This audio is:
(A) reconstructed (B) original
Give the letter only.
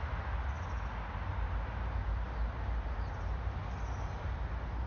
B